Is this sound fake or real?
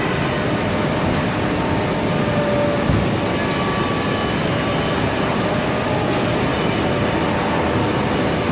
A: real